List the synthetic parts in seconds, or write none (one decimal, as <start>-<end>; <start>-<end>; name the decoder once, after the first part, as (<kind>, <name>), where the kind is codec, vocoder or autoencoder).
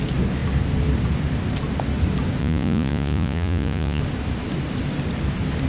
2.4-4.0 (vocoder, Vocos)